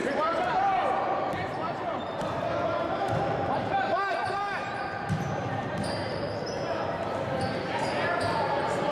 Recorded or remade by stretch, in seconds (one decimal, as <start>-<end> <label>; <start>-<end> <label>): 0.0-8.9 remade